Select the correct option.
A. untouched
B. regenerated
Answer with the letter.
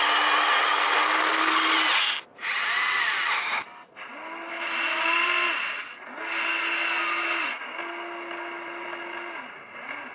A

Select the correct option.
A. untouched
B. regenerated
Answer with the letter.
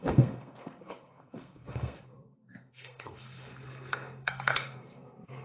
B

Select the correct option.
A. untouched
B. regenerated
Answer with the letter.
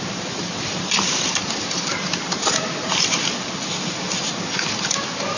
A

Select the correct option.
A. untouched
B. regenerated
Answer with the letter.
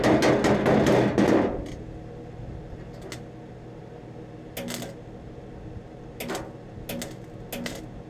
A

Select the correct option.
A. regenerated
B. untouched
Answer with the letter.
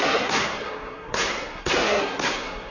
A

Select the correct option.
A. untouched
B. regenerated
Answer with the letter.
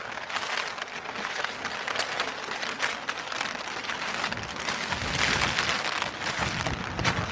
A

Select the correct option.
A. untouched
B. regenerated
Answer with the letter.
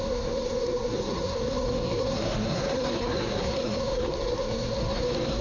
B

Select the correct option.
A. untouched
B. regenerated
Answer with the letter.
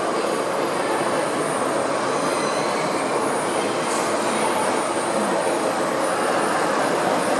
A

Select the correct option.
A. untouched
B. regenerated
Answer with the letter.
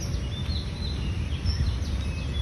A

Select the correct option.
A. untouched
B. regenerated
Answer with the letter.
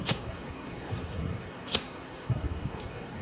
B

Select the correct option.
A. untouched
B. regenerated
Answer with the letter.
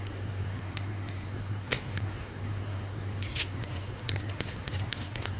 B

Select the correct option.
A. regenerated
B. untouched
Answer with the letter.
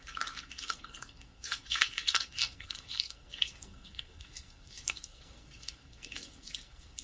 A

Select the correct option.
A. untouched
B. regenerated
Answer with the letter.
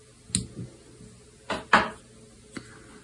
A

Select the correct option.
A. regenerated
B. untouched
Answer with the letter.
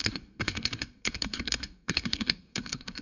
A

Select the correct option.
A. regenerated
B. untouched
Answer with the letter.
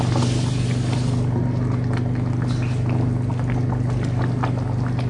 B